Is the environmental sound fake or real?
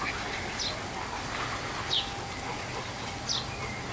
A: real